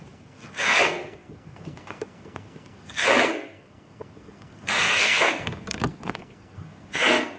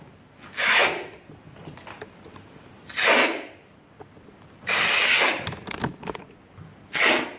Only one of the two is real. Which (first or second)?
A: second